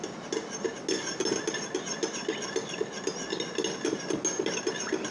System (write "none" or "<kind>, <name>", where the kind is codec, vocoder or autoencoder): none